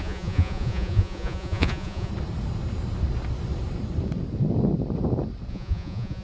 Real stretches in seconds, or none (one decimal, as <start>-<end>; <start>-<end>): 2.1-5.5